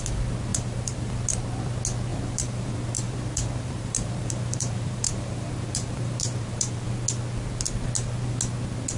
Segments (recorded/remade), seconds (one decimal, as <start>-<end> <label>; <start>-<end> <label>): 0.0-0.5 recorded; 0.5-1.1 remade; 1.1-2.1 recorded; 2.1-6.9 remade; 6.9-9.0 recorded